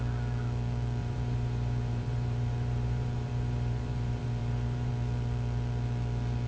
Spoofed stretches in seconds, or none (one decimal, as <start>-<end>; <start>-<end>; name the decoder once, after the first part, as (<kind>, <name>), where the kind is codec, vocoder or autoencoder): 1.0-4.9 (vocoder, BigVGAN v2)